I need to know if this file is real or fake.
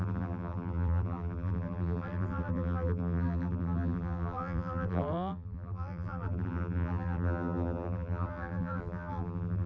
fake